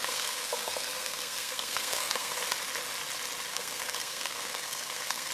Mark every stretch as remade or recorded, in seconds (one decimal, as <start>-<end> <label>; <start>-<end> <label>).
0.0-2.3 remade; 2.3-3.5 recorded; 3.5-5.3 remade

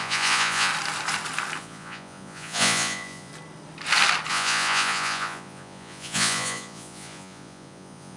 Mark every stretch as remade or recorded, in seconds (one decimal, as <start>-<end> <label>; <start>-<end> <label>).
0.0-0.7 remade; 0.7-1.6 recorded; 1.6-3.3 remade; 3.3-4.3 recorded; 4.3-8.2 remade

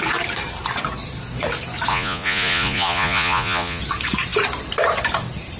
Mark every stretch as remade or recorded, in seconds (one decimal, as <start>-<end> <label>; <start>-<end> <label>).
0.0-1.9 recorded; 1.9-3.8 remade; 3.8-5.6 recorded

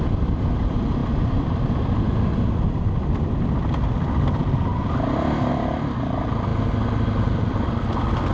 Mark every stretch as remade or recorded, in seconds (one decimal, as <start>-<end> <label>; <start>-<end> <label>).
0.0-8.3 recorded